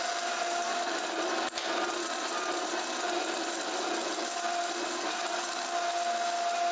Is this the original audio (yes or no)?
yes